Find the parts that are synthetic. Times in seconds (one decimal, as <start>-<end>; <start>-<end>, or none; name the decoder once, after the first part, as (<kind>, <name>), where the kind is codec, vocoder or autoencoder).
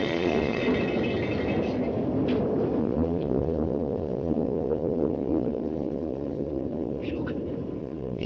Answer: 0.0-0.6 (vocoder, Vocos); 2.8-7.0; 7.8-8.3